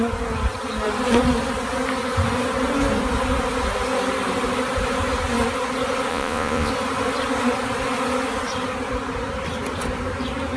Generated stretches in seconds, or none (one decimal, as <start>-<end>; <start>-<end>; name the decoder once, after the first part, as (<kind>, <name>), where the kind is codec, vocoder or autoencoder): 6.1-6.7 (vocoder, Vocos)